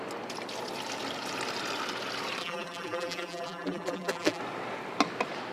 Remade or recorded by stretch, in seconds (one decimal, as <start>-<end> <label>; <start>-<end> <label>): 0.0-2.4 recorded; 2.4-4.4 remade; 4.4-5.5 recorded